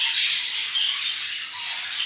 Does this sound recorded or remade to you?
remade